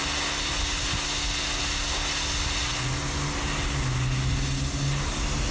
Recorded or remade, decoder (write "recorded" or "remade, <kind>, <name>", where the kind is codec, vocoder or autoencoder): recorded